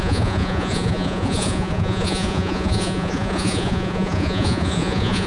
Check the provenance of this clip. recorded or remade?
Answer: remade